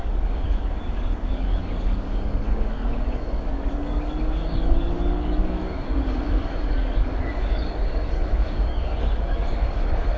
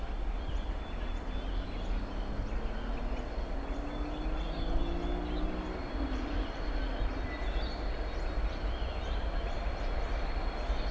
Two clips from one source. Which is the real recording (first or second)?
second